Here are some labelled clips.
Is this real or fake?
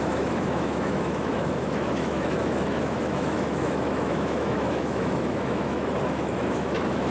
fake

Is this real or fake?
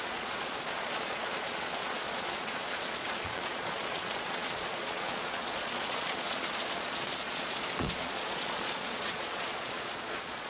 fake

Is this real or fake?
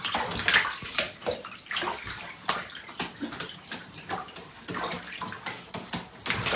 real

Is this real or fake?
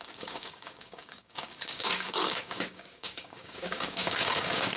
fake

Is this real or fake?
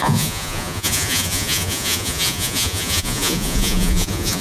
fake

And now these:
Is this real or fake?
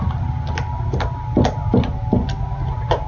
real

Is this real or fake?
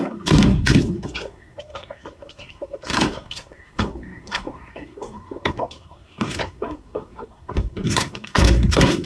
fake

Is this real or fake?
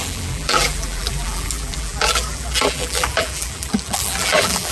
fake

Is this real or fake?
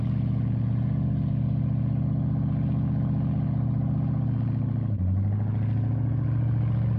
real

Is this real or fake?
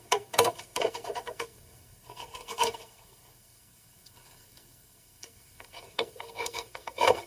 fake